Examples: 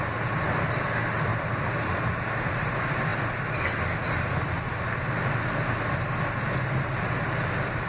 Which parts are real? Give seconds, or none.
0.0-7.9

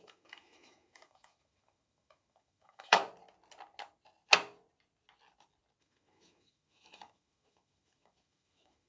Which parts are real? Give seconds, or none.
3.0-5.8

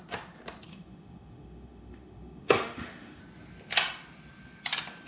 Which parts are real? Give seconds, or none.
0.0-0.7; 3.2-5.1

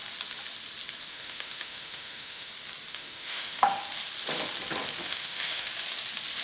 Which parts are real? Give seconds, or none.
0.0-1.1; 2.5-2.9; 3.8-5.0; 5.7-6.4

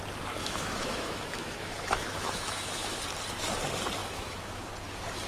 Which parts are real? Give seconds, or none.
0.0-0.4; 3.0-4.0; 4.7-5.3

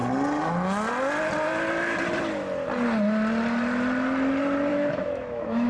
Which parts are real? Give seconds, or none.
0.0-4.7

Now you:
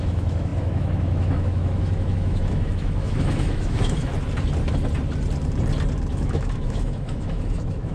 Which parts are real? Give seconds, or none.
4.1-6.1

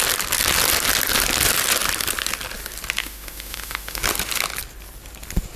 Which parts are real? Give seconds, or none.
0.0-3.0; 4.0-5.6